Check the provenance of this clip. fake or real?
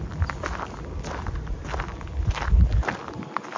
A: real